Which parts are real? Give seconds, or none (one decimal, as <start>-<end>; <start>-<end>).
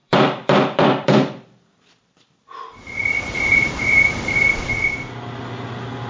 3.7-6.1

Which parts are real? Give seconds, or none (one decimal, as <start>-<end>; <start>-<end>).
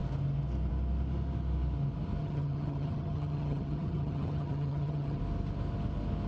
0.0-2.2; 5.2-6.3